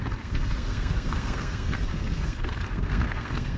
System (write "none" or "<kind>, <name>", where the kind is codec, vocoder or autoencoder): codec, SNAC